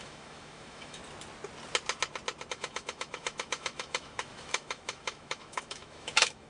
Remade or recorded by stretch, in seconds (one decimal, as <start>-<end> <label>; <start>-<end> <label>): 0.0-1.0 remade; 1.0-2.5 recorded; 2.5-6.5 remade